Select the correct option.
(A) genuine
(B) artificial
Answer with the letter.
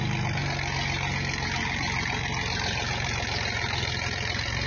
A